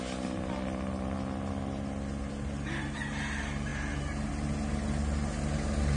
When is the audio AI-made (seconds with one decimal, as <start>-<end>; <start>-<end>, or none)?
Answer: none